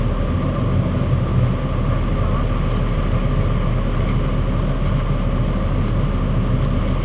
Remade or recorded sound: recorded